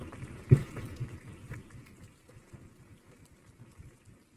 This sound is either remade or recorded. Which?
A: recorded